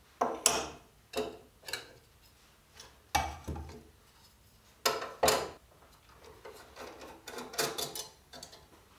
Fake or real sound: real